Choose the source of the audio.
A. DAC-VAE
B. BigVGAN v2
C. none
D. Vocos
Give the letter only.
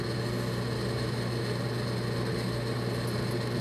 C